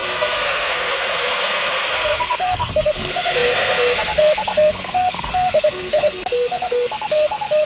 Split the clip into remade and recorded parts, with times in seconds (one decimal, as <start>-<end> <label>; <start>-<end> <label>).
0.0-7.7 remade